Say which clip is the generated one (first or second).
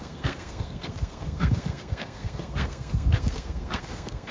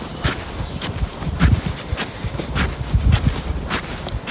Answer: first